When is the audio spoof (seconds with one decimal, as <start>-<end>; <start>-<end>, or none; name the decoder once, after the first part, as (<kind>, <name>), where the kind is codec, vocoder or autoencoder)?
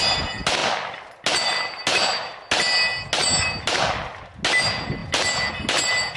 none